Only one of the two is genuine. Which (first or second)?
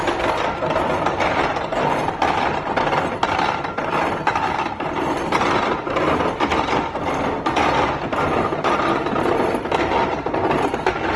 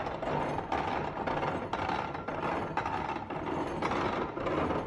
second